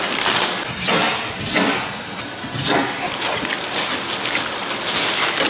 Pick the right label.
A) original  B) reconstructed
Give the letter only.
A